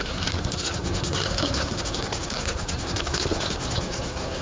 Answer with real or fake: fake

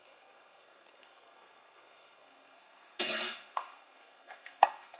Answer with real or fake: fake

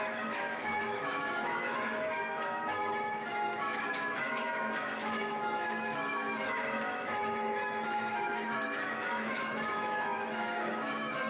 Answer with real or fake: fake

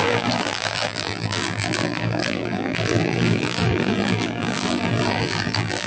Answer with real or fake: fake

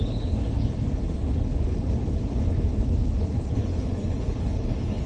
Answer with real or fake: fake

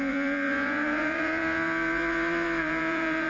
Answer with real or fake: fake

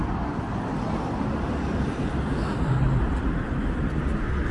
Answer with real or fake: real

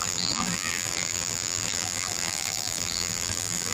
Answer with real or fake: fake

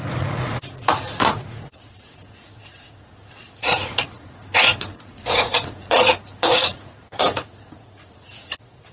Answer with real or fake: fake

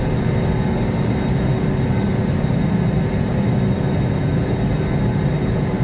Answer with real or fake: real